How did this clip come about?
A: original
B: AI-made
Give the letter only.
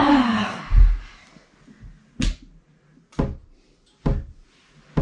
A